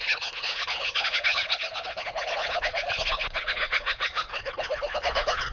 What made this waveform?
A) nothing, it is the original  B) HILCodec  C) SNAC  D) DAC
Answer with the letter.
B